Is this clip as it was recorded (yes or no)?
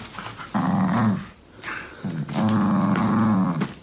yes